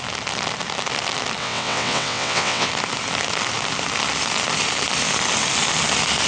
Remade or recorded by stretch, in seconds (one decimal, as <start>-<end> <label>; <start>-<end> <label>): 0.0-1.4 recorded; 1.4-2.7 remade; 2.7-6.3 recorded

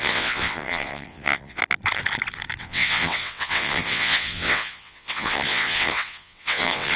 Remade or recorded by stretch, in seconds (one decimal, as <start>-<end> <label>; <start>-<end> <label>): 0.0-1.6 remade; 1.6-2.6 recorded; 2.6-7.0 remade